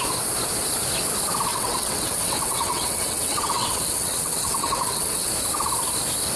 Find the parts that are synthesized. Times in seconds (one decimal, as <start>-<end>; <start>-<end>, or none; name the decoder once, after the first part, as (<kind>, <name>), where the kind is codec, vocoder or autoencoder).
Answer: 1.5-5.3 (vocoder, WaveNeXt)